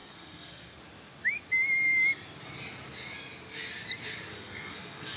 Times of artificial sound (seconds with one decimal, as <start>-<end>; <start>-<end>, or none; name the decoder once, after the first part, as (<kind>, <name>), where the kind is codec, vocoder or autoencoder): 0.0-0.8 (codec, SNAC); 4.3-5.2